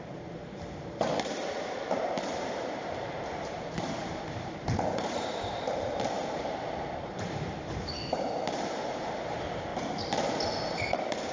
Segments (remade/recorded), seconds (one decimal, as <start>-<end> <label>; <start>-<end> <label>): 0.0-9.7 remade; 9.7-10.6 recorded; 10.6-11.3 remade